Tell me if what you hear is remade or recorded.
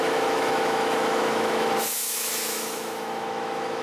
remade